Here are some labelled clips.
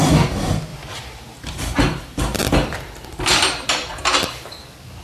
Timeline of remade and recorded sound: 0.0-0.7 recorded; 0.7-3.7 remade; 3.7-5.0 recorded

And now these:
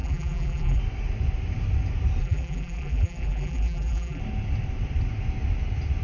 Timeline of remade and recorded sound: 0.0-0.8 remade; 0.8-2.2 recorded; 2.2-4.2 remade; 4.2-6.0 recorded

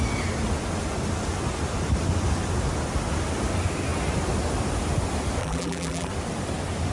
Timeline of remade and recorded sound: 0.0-5.4 recorded; 5.4-6.1 remade; 6.1-6.9 recorded